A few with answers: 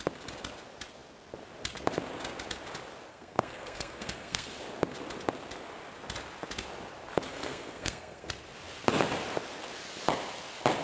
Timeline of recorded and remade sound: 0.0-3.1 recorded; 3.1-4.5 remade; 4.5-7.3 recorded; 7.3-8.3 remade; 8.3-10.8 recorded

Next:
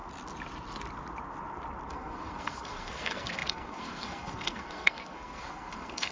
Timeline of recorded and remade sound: 0.0-1.9 recorded; 1.9-6.1 remade